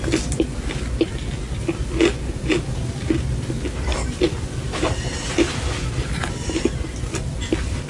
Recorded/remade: recorded